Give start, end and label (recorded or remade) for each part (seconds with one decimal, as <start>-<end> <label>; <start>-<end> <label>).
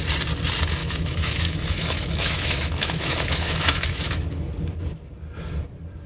0.0-0.8 recorded; 0.8-4.5 remade; 4.5-6.1 recorded